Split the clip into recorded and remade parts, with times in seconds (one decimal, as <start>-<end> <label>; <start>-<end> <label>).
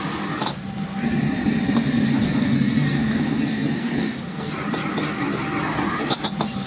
0.0-2.2 recorded; 2.2-4.5 remade; 4.5-6.7 recorded